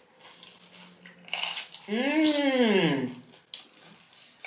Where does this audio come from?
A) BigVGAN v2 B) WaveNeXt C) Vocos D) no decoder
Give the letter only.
D